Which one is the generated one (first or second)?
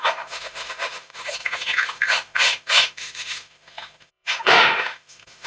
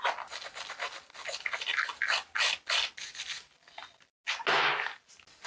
first